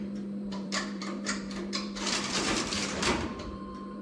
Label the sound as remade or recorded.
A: remade